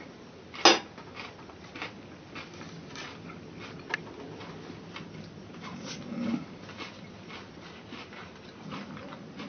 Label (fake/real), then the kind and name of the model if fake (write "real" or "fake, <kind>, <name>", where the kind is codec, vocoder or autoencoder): real